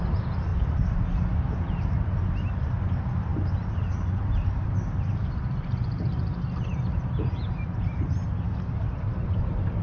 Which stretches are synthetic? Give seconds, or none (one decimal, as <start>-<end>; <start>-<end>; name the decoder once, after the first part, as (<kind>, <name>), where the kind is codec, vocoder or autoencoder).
none